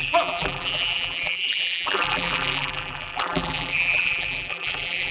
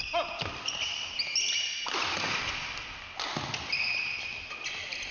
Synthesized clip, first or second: first